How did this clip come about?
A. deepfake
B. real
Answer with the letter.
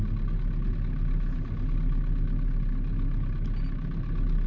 B